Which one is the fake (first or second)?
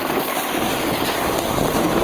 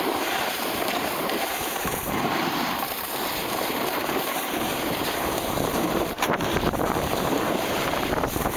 second